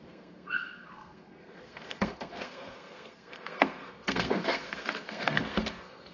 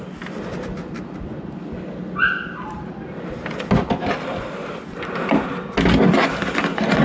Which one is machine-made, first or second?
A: first